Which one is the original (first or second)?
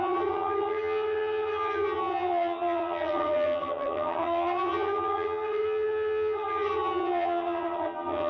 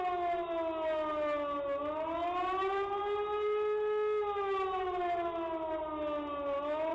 second